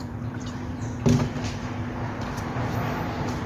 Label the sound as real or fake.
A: fake